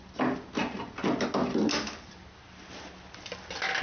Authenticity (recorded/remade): recorded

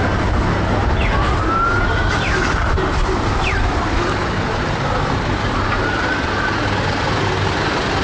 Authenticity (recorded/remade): recorded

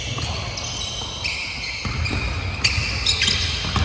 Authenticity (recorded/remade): recorded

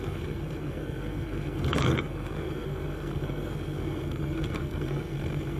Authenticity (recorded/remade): remade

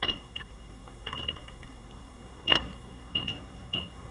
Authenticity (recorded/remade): remade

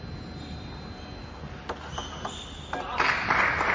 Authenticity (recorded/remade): recorded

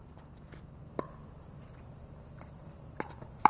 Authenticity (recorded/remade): remade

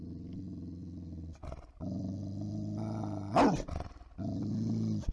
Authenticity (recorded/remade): recorded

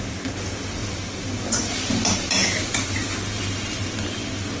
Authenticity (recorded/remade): recorded